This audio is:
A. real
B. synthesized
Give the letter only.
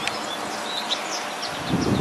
A